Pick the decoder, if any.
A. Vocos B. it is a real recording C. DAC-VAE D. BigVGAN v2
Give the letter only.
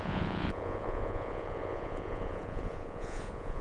A